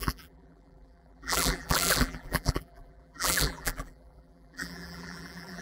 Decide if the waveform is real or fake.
fake